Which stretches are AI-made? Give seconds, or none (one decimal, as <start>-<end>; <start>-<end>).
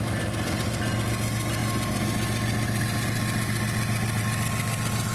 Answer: none